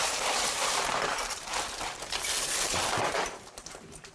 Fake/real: fake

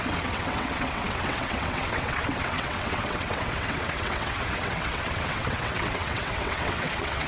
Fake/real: fake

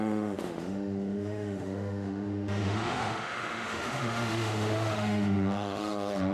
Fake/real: fake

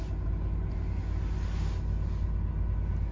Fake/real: real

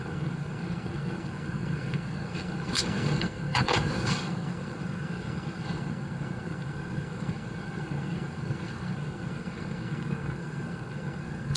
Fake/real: fake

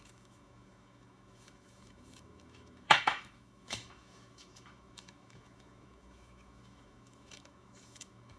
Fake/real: fake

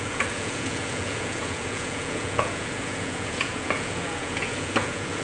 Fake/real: fake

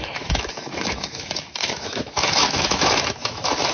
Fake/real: fake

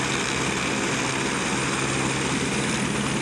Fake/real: real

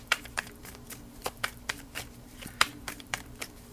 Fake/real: fake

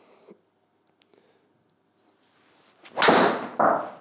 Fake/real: real